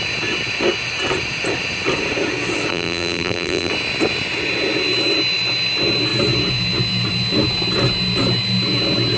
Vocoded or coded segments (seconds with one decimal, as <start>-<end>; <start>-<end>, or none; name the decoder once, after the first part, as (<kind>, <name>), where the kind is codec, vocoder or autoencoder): 2.7-3.7 (vocoder, BigVGAN v2)